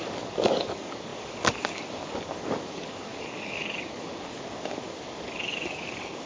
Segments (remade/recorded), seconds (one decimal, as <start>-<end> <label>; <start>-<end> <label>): 0.0-6.3 remade